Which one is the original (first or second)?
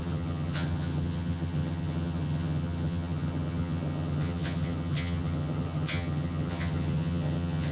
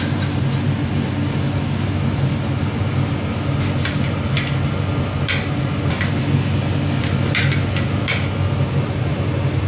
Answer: second